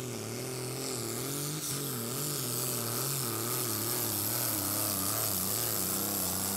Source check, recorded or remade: recorded